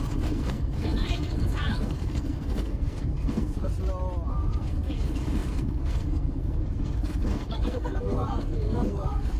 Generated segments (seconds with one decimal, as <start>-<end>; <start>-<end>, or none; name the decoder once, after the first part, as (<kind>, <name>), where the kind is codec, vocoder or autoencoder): 0.0-3.7 (codec, SNAC); 4.3-9.4